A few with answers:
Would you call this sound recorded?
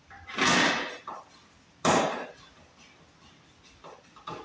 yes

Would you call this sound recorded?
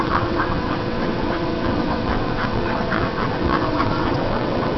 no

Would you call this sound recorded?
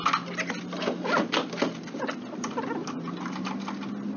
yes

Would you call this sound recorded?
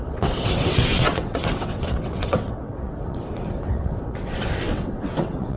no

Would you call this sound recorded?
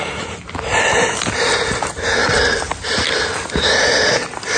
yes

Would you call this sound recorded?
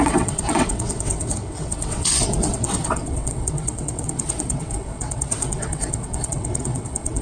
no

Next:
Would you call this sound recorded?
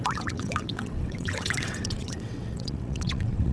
no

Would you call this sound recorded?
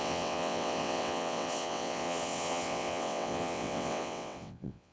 no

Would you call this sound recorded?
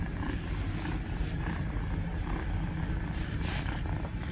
yes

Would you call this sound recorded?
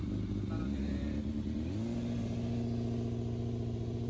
yes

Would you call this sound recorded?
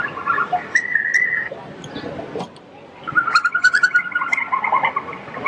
yes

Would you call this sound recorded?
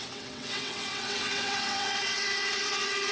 no